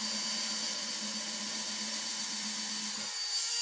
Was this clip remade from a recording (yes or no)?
no